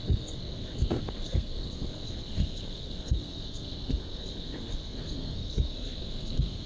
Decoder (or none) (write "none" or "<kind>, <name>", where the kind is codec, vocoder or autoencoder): codec, SNAC